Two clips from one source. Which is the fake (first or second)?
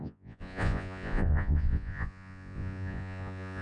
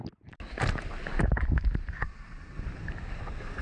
first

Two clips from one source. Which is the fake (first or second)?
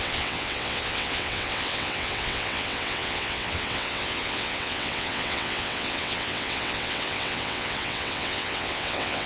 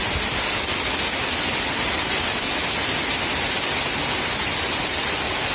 first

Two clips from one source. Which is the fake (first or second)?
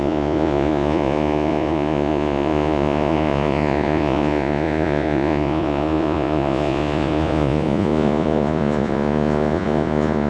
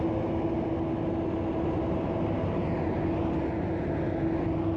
first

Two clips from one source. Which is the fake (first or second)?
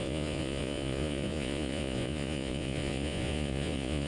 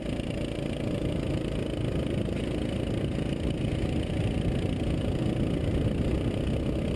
first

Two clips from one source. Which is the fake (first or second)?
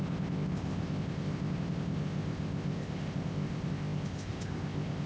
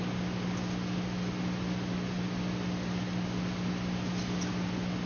first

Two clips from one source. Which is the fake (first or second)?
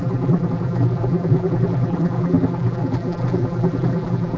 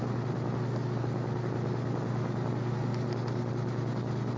first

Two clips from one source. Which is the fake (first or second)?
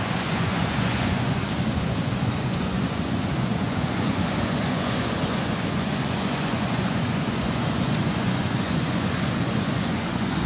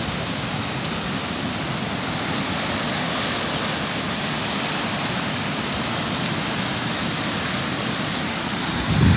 first